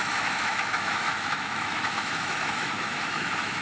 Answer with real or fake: fake